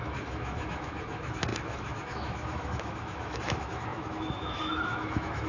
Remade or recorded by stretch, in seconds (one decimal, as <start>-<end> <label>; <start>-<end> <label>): 0.0-5.5 remade